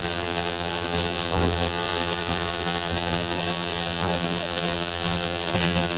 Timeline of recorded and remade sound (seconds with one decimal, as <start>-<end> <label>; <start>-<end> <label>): 0.0-6.0 remade